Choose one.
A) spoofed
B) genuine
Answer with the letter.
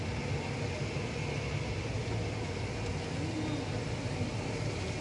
B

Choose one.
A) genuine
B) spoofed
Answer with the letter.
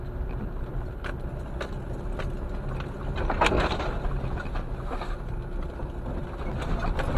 A